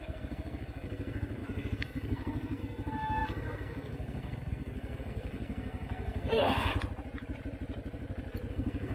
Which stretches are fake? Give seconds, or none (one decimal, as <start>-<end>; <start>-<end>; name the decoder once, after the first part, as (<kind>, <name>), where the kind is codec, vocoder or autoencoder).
0.0-6.7 (codec, SNAC); 8.5-8.9